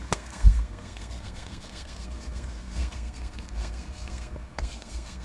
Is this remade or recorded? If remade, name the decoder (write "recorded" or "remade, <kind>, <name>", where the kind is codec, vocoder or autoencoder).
remade, codec, SNAC